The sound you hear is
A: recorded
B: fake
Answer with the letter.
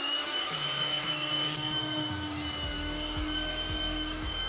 B